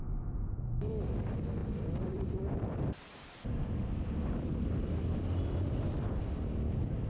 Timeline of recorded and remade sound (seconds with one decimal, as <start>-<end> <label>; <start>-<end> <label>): 0.0-7.1 remade

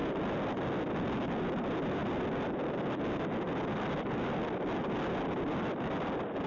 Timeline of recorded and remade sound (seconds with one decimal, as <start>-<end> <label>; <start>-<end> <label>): 0.0-6.5 recorded